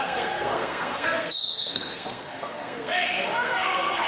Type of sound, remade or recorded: remade